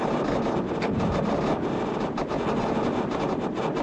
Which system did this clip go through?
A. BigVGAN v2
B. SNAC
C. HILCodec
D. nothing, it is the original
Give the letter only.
D